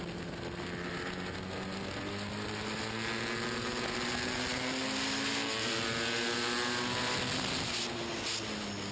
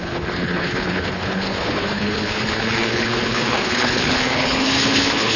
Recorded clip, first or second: first